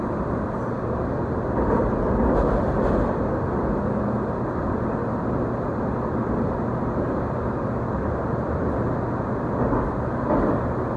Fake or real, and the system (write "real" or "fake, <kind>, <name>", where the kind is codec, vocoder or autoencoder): real